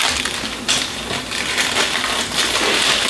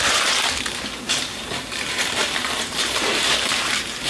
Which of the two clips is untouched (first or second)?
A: first